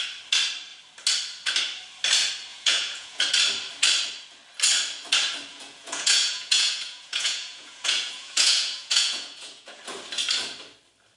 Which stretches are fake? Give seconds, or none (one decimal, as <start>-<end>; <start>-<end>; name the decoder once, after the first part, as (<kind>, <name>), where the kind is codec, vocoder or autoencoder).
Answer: 2.5-3.2 (vocoder, Vocos); 5.5-9.8